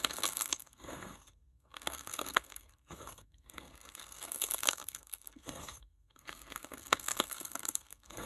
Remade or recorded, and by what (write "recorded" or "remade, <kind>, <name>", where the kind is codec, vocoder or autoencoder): remade, codec, SNAC